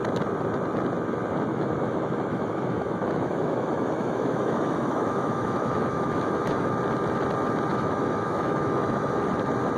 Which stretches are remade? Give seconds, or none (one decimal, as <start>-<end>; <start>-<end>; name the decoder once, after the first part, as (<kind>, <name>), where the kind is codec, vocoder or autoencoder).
1.5-6.7 (autoencoder, DAC-VAE); 7.7-9.2